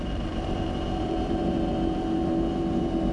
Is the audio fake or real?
fake